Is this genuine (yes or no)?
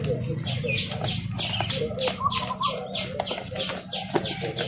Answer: yes